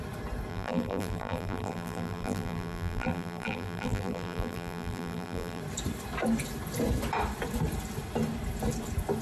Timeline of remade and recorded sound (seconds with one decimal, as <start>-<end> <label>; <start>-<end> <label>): 0.0-0.5 recorded; 0.5-5.6 remade; 5.6-9.2 recorded